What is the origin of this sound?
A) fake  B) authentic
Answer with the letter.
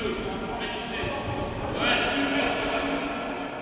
B